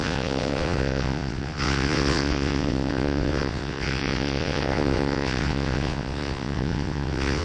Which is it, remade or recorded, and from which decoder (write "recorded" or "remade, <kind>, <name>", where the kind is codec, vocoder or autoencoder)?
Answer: remade, vocoder, WaveNeXt